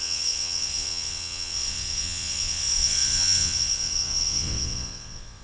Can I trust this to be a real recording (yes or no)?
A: no